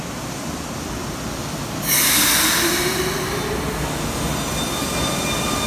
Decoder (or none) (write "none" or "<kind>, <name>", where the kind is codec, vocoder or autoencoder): none